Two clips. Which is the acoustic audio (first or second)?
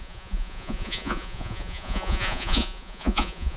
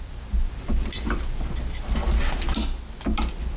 second